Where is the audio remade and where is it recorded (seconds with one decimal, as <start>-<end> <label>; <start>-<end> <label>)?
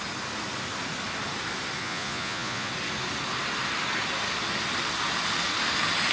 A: 0.0-1.8 recorded; 1.8-2.7 remade; 2.7-6.1 recorded